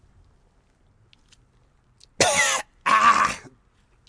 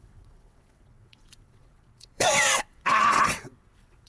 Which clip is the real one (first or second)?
first